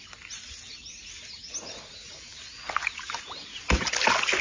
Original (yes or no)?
yes